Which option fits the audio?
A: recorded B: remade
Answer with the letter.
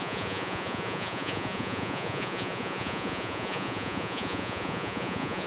B